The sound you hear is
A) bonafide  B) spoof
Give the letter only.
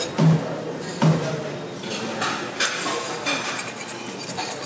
A